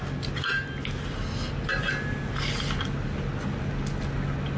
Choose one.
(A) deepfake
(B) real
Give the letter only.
B